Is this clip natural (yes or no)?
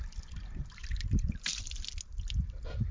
yes